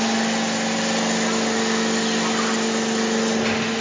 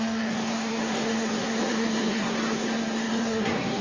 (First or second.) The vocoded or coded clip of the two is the second